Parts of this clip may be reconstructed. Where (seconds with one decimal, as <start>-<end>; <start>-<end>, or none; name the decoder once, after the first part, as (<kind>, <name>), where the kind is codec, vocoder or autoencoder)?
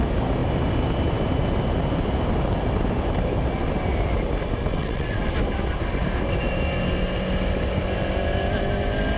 4.7-5.3 (vocoder, WaveNeXt)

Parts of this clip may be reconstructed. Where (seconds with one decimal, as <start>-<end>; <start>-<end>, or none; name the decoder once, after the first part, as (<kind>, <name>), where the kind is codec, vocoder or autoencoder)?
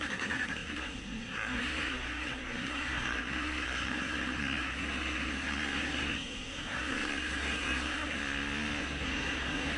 0.0-8.2 (codec, SNAC); 8.8-9.8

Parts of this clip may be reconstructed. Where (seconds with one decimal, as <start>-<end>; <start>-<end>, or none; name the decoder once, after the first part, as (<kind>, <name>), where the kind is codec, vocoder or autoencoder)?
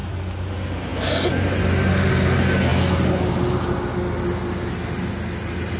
none